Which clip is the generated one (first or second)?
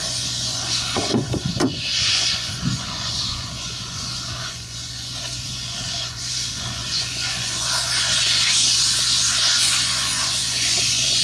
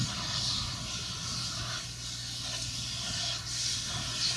first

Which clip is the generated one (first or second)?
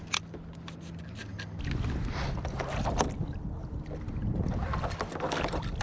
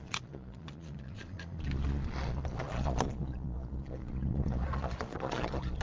second